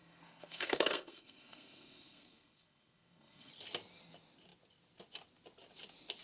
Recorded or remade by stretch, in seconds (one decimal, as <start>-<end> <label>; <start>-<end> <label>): 0.0-3.5 remade; 3.5-6.2 recorded